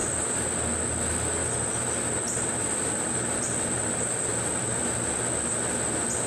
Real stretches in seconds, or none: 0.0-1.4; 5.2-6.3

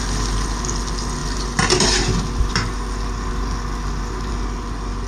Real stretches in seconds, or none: 0.0-1.2; 4.3-5.1

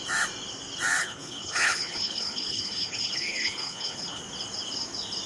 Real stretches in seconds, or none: 0.0-1.0; 4.2-5.3